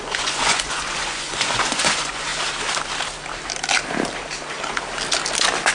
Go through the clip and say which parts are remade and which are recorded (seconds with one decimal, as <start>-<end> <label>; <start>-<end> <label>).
0.0-2.3 remade; 2.3-5.7 recorded